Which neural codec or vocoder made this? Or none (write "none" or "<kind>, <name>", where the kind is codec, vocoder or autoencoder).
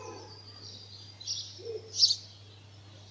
none